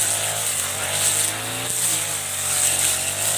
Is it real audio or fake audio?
real